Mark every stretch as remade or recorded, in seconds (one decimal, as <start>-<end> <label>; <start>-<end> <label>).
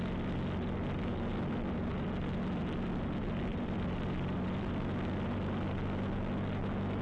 0.0-3.5 recorded; 3.5-4.7 remade; 4.7-7.0 recorded